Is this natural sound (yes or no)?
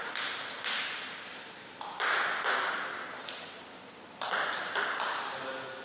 yes